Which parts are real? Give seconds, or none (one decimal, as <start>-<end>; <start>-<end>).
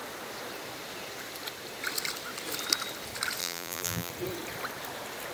0.0-3.4; 4.1-5.3